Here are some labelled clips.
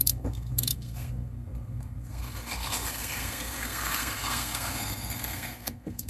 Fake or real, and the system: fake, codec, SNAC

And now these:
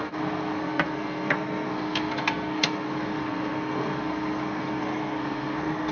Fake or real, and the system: fake, codec, SNAC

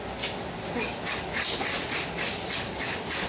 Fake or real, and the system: real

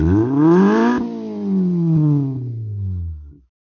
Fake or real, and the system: real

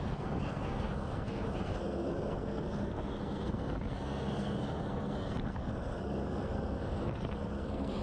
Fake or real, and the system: fake, codec, SNAC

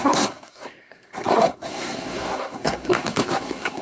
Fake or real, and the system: fake, codec, SNAC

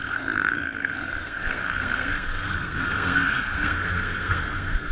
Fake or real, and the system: fake, codec, SNAC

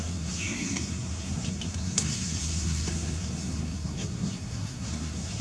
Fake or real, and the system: fake, codec, SNAC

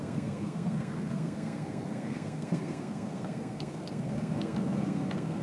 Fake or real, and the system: fake, codec, SNAC